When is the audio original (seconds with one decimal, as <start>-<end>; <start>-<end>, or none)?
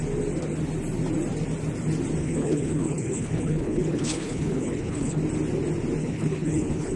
0.0-2.2; 5.2-6.0